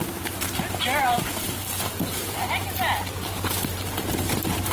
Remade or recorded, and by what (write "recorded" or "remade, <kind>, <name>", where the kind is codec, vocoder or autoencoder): remade, vocoder, BigVGAN v2